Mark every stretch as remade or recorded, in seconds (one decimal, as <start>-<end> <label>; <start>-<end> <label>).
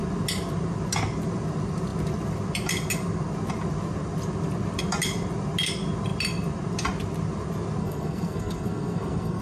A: 0.0-7.8 recorded; 7.8-9.4 remade